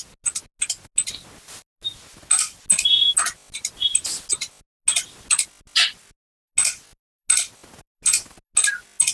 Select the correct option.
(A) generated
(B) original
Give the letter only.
B